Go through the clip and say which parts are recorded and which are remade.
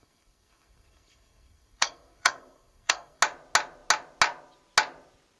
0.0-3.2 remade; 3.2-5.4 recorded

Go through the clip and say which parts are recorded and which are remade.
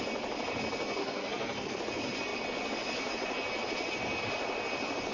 0.0-1.0 recorded; 1.0-1.8 remade; 1.8-5.1 recorded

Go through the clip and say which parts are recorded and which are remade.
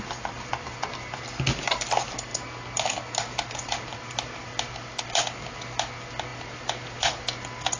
0.0-7.8 recorded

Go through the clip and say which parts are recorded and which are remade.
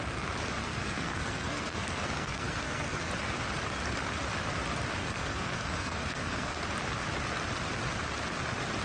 0.0-0.6 recorded; 0.6-3.1 remade; 3.1-5.0 recorded; 5.0-6.6 remade; 6.6-8.8 recorded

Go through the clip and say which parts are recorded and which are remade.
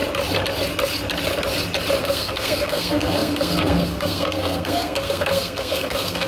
0.0-2.0 recorded; 2.0-6.3 remade